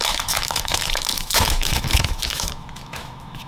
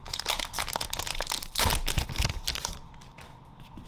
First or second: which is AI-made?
first